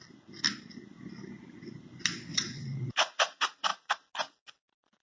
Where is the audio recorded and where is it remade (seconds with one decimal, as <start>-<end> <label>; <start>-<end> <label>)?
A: 0.0-2.3 recorded; 2.3-2.9 remade; 2.9-5.0 recorded